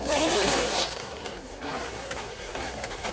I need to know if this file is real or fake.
fake